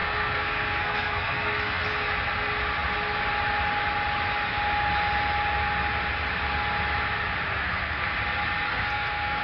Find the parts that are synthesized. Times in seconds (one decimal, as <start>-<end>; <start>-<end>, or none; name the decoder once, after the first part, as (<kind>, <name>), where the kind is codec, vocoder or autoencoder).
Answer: 0.0-1.9 (codec, SNAC); 7.6-8.1; 8.7-9.4